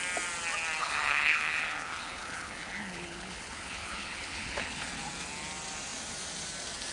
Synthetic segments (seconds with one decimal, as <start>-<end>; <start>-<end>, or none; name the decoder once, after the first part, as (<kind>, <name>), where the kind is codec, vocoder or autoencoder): 0.8-4.9 (codec, HILCodec)